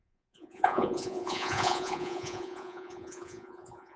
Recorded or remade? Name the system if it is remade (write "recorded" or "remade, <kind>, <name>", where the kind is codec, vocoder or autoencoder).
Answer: remade, vocoder, Vocos